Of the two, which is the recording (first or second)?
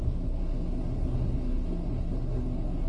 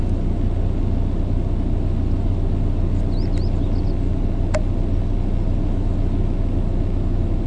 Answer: second